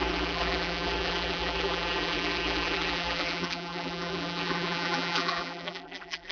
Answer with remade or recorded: remade